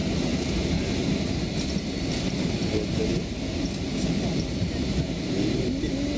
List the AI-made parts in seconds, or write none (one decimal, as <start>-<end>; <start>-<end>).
1.6-3.1; 5.5-6.2